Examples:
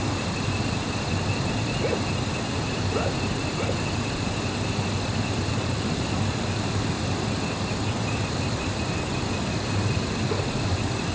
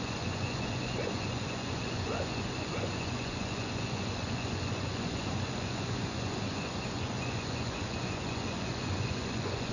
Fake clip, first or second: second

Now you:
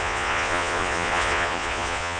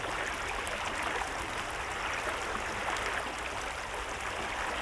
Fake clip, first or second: first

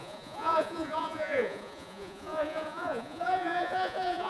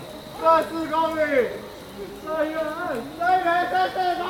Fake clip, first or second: first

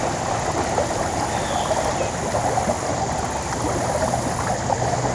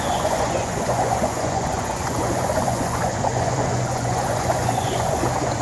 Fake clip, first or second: second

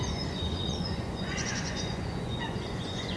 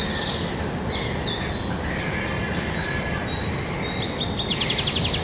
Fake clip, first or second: first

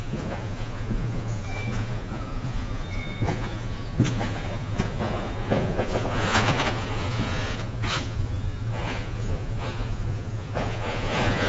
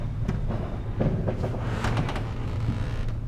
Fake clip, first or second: first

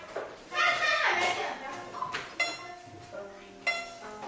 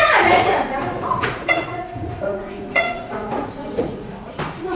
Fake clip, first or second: second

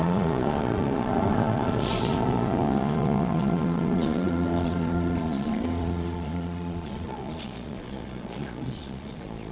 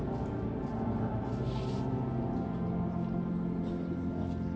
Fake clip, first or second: first